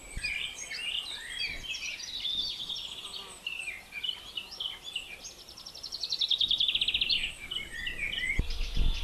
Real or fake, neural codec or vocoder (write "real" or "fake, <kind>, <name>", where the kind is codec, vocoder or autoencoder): real